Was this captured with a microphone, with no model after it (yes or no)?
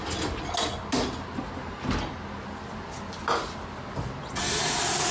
yes